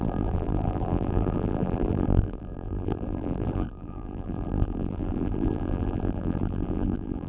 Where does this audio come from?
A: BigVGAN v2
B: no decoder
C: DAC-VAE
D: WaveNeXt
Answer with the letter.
A